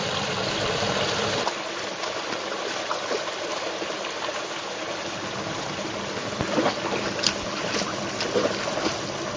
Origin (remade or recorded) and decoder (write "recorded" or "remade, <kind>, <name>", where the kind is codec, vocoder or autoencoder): recorded